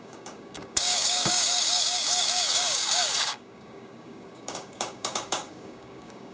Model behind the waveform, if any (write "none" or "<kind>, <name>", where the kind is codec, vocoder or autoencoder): codec, DAC